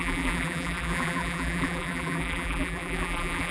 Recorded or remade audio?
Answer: remade